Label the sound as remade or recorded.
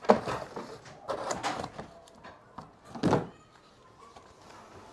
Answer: recorded